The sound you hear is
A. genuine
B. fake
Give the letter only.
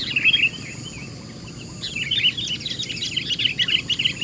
A